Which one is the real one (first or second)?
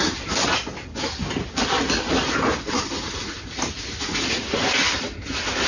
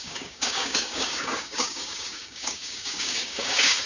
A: first